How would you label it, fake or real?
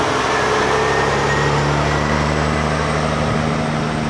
real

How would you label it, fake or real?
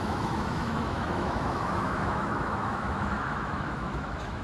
fake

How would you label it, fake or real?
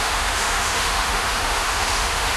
fake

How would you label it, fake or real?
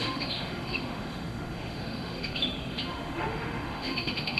fake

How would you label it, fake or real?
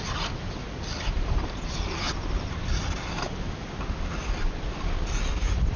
real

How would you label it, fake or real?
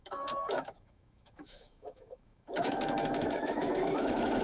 fake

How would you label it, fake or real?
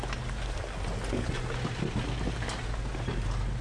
real